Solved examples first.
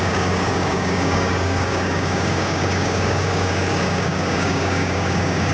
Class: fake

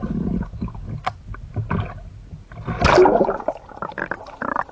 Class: real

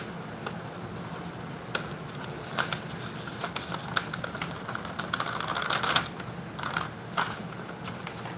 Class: real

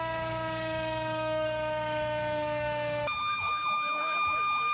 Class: fake